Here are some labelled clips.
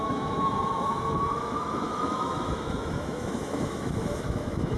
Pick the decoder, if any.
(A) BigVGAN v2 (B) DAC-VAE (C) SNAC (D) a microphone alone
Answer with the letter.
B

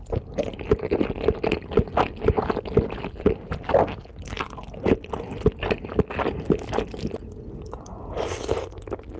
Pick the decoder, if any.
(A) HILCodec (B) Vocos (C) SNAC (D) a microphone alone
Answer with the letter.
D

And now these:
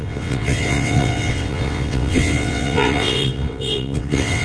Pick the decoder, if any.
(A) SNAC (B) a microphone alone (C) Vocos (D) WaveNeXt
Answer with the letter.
D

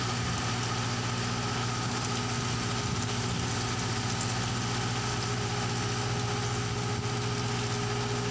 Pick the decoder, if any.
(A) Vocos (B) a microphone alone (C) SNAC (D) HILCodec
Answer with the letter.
B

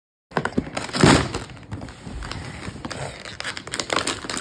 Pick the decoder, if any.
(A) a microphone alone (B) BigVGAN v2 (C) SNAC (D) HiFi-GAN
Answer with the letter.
A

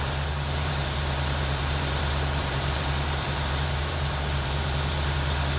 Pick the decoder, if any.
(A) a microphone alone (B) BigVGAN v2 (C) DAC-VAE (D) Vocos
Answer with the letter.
B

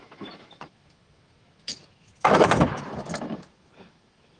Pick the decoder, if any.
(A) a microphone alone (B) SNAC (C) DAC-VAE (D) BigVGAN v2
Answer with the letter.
C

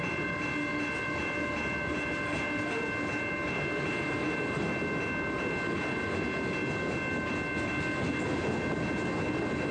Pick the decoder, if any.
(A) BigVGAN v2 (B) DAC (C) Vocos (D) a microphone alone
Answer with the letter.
D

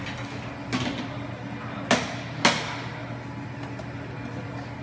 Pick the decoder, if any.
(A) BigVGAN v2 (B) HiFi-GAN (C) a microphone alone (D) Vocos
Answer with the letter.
C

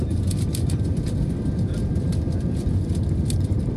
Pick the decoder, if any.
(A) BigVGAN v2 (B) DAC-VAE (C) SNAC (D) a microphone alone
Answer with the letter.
A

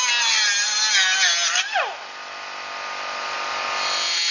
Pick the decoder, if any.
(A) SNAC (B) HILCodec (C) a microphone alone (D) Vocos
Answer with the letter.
C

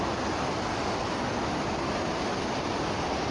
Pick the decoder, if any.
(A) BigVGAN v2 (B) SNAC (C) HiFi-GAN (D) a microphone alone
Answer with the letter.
D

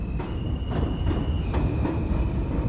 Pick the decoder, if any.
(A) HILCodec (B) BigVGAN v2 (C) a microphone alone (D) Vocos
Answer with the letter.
B